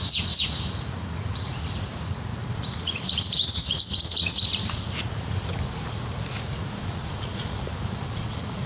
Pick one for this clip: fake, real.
fake